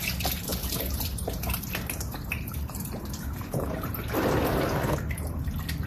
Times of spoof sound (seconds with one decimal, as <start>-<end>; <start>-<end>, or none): 0.5-4.0